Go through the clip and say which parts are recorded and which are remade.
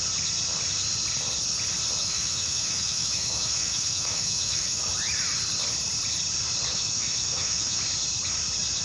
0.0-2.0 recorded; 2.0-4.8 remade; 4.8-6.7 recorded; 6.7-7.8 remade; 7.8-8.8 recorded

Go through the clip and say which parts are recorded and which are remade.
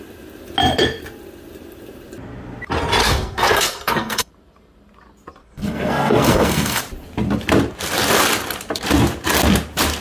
0.0-3.0 recorded; 3.0-4.3 remade; 4.3-5.4 recorded; 5.4-6.8 remade; 6.8-10.0 recorded